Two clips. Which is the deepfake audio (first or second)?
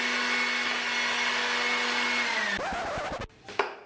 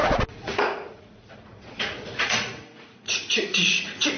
second